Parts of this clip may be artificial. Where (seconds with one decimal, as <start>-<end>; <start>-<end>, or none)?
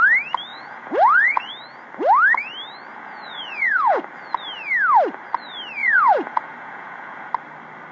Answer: 0.5-1.5; 2.9-4.0; 5.8-7.3